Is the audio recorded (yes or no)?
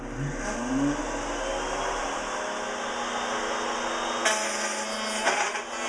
yes